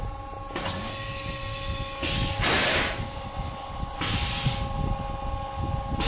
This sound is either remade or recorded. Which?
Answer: recorded